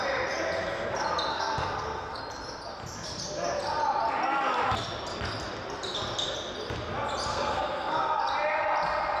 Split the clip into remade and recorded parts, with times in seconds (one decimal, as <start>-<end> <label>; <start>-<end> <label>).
0.0-1.3 recorded; 1.3-2.2 remade; 2.2-7.3 recorded; 7.3-8.2 remade; 8.2-9.2 recorded